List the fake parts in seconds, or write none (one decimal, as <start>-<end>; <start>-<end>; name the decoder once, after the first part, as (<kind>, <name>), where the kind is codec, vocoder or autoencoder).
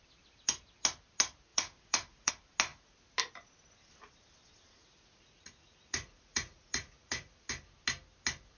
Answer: 1.5-2.3 (vocoder, Vocos); 4.8-7.5